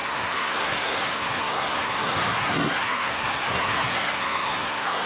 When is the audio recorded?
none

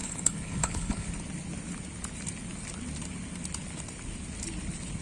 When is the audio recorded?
1.1-5.0

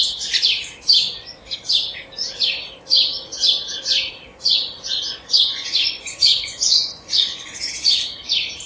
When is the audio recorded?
0.0-4.3; 7.7-8.7

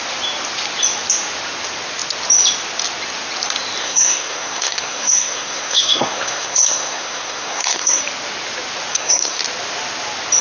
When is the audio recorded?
0.0-3.8; 8.0-8.9; 9.4-10.4

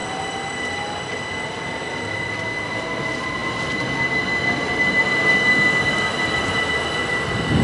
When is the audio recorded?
0.0-7.6

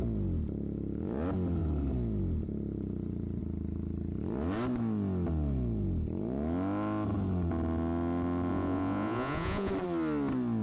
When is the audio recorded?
0.0-8.5; 9.7-10.6

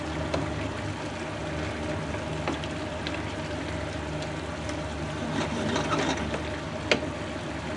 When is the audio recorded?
0.0-7.8

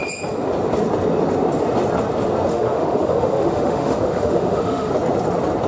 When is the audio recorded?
0.0-2.5; 4.9-5.7